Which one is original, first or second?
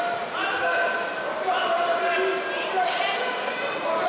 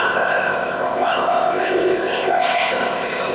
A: first